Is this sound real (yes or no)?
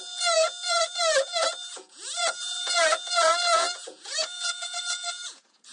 no